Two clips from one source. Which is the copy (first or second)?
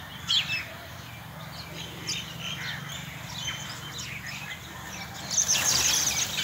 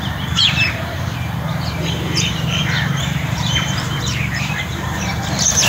second